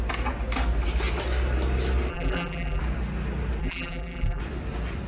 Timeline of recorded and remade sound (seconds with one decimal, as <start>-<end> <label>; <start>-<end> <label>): 0.0-2.1 recorded; 2.1-2.8 remade; 2.8-3.6 recorded; 3.6-4.4 remade; 4.4-5.1 recorded